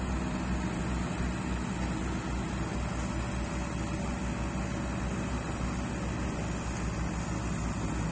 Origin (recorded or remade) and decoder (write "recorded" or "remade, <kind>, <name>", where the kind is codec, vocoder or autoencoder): recorded